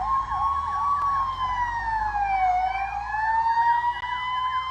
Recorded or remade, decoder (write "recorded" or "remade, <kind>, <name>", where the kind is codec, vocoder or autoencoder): recorded